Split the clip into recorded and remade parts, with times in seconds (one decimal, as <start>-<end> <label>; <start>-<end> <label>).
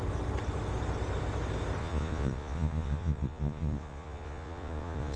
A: 0.0-1.8 recorded; 1.8-5.2 remade